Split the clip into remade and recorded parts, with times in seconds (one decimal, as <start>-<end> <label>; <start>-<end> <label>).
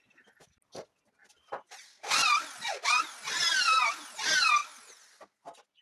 0.0-5.8 recorded